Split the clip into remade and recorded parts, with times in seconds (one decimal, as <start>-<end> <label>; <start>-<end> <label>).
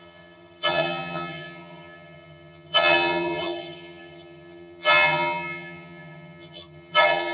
0.0-7.3 remade